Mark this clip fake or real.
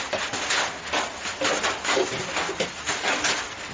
real